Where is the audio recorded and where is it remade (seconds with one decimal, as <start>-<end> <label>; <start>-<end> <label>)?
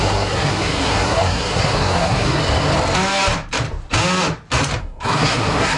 0.0-2.4 remade; 2.4-4.8 recorded; 4.8-5.8 remade